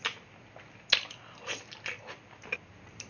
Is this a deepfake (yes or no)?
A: no